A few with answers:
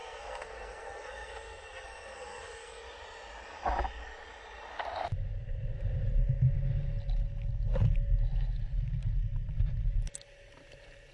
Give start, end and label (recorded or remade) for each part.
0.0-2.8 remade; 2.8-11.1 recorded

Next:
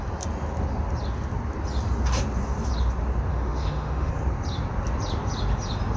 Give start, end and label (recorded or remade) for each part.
0.0-3.3 recorded; 3.3-4.1 remade; 4.1-6.0 recorded

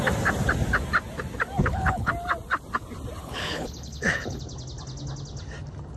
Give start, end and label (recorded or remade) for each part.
0.0-1.6 recorded; 1.6-2.1 remade; 2.1-3.2 recorded; 3.2-4.4 remade; 4.4-6.0 recorded